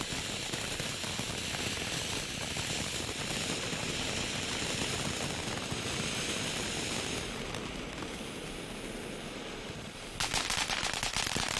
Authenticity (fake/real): real